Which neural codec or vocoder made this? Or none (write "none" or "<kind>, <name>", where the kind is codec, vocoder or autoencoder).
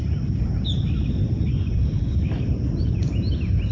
none